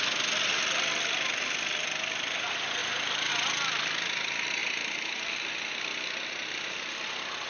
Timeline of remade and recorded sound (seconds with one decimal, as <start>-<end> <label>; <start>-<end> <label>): 0.0-2.8 recorded; 2.8-3.3 remade; 3.3-4.6 recorded; 4.6-5.4 remade; 5.4-7.5 recorded

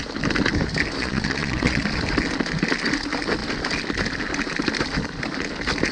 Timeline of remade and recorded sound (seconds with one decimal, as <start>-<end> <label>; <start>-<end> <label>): 0.0-1.0 recorded; 1.0-1.8 remade; 1.8-5.9 recorded